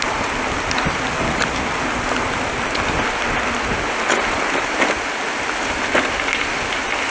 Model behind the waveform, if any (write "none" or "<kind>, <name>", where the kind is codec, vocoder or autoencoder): none